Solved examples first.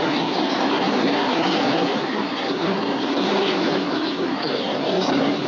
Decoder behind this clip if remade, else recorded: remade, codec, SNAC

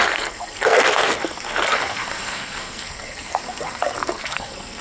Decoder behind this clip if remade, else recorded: remade, codec, SNAC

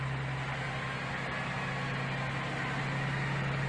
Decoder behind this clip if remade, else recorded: recorded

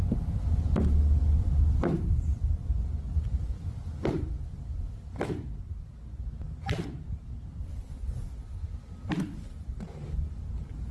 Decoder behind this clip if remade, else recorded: recorded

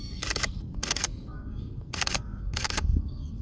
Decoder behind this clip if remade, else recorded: remade, codec, SNAC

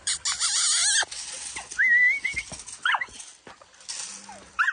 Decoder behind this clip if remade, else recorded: recorded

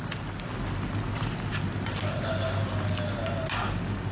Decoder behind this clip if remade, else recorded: recorded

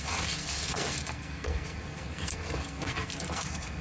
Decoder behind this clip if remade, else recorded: remade, codec, SNAC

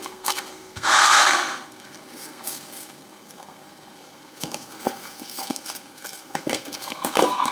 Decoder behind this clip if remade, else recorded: remade, codec, SNAC